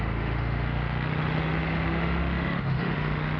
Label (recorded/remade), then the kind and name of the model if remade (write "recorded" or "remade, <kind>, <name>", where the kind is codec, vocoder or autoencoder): remade, autoencoder, DAC-VAE